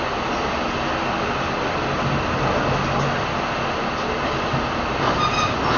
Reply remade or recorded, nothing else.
recorded